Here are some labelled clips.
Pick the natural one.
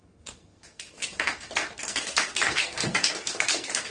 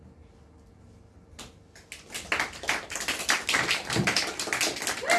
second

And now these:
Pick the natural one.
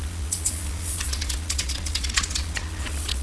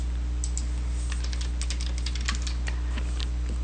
second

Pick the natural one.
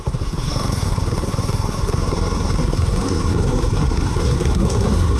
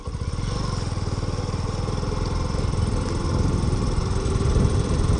second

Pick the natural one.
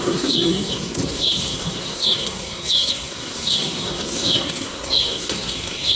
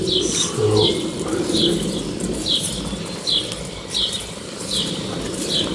second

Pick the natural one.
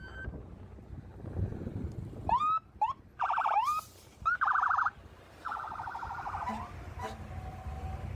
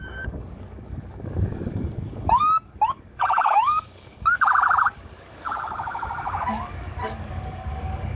first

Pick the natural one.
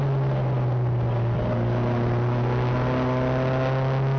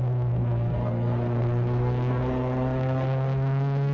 first